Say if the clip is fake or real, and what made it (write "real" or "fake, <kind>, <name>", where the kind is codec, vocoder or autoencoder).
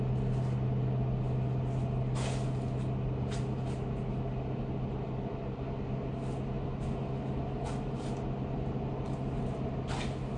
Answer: real